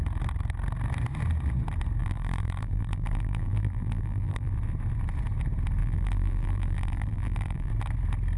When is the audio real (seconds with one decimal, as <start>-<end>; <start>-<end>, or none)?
0.0-2.0; 4.5-5.8; 7.7-8.4

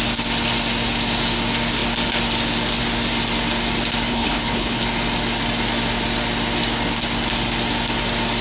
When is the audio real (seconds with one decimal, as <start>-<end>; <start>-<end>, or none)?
0.0-4.1; 4.8-8.4

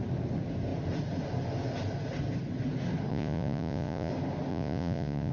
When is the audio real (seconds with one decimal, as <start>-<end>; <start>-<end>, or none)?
0.0-3.1; 4.1-4.5

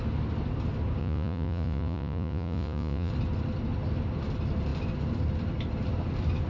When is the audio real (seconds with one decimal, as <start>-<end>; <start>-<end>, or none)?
0.0-1.0; 3.1-6.5